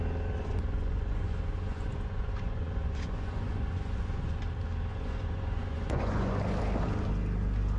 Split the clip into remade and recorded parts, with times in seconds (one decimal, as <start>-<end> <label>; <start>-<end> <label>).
0.0-0.4 recorded; 0.4-4.4 remade; 4.4-4.9 recorded; 4.9-6.4 remade; 6.4-7.8 recorded